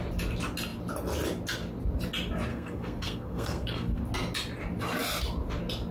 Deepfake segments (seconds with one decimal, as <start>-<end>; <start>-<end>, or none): 2.5-4.0